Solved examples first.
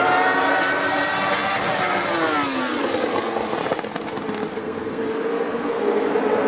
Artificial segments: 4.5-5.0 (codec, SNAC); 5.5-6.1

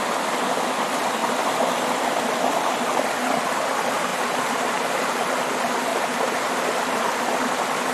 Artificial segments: 4.1-5.2 (vocoder, BigVGAN v2); 5.9-7.2

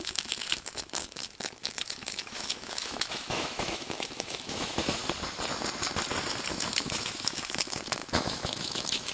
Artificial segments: 0.0-5.0 (autoencoder, DAC-VAE); 6.5-9.1

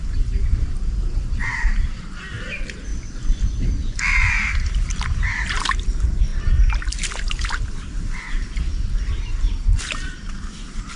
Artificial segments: 0.0-2.9 (vocoder, BigVGAN v2); 3.6-6.3; 7.8-11.0

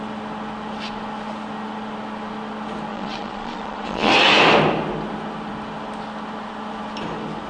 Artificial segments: 2.9-4.1 (vocoder, Vocos)

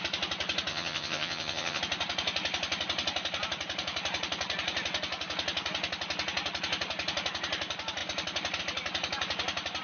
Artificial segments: 0.7-1.8 (vocoder, HiFi-GAN)

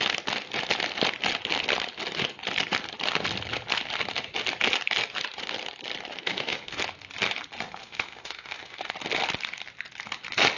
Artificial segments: 6.1-6.8 (autoencoder, DAC-VAE); 7.8-8.9